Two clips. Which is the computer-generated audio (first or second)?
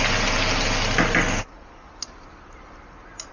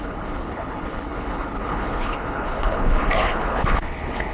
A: second